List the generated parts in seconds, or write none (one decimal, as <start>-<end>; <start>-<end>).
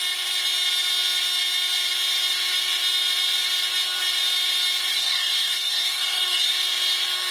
4.9-6.5